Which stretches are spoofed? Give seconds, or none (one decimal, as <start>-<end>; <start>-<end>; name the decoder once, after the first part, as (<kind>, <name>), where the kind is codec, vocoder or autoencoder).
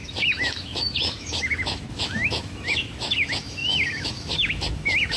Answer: 0.0-5.2 (autoencoder, DAC-VAE)